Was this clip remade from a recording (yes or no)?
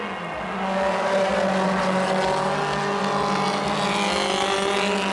no